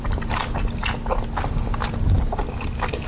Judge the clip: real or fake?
real